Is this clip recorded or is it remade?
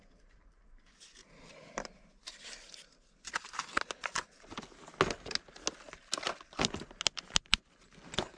recorded